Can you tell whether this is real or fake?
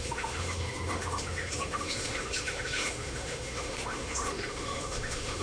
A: fake